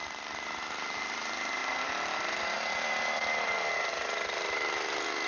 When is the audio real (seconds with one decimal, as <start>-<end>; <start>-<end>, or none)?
0.0-5.3